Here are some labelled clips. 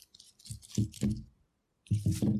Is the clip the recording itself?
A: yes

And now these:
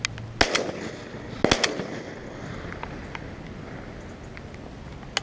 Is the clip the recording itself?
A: yes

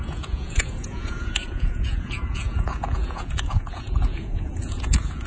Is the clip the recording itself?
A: no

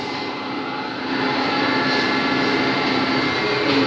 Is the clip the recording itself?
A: yes